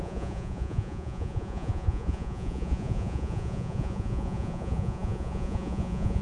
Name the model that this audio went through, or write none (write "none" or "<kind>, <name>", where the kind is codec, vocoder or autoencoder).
vocoder, Vocos